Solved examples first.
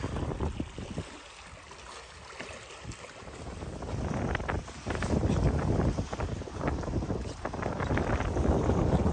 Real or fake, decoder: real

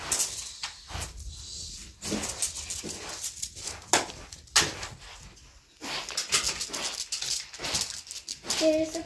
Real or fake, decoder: real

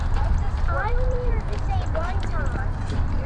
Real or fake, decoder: fake, vocoder, BigVGAN v2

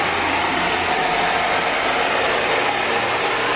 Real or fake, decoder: real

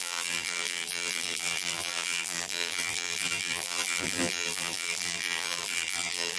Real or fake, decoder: fake, vocoder, BigVGAN v2